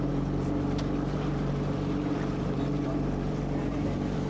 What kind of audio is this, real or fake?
fake